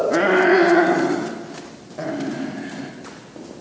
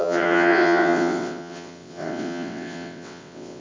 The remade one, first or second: second